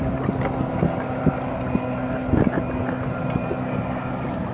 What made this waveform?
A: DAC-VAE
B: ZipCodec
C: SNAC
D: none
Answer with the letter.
D